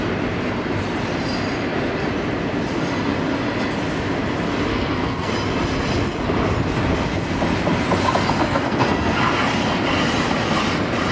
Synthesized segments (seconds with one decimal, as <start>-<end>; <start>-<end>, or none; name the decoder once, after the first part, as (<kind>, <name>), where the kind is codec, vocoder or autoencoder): 4.7-5.3 (codec, SNAC); 8.4-9.2